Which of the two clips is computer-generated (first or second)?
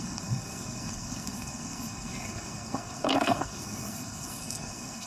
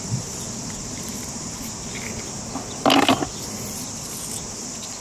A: first